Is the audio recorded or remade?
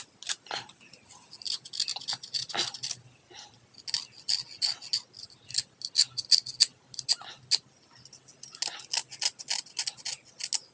recorded